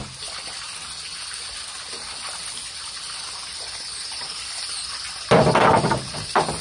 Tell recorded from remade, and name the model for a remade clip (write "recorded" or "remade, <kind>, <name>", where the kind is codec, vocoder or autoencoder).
recorded